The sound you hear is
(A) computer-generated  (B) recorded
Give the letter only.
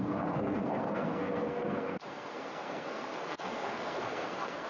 A